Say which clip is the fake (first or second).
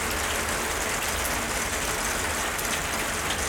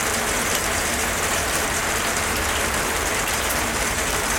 second